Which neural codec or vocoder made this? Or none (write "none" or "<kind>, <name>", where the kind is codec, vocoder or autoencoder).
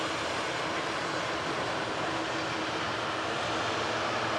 none